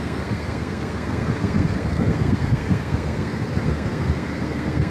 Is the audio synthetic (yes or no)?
yes